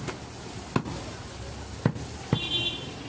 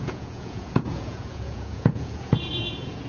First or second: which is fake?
second